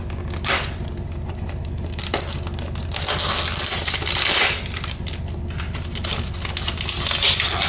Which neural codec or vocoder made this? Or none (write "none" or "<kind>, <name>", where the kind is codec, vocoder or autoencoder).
none